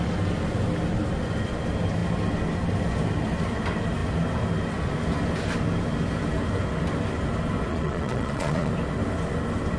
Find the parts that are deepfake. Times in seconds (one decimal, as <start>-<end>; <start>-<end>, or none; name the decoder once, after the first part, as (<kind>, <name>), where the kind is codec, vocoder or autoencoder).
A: 7.7-8.7 (vocoder, Vocos)

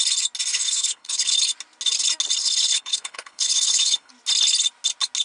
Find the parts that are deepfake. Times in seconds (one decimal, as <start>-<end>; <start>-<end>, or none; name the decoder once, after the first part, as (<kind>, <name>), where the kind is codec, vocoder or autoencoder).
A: 0.5-1.4 (codec, HILCodec); 2.4-4.1

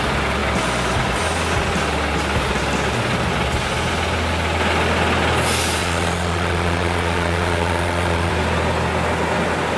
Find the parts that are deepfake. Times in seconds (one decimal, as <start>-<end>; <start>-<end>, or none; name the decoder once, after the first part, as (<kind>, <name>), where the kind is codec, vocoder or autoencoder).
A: 5.8-8.3 (vocoder, Vocos)

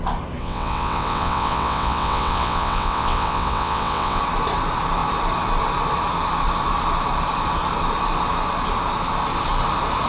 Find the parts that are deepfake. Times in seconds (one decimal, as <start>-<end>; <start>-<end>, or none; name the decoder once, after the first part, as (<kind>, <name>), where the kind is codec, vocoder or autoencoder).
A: 0.4-4.2 (vocoder, WaveNeXt)